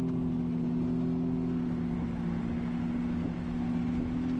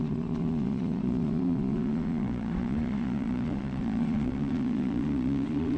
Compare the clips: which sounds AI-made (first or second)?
second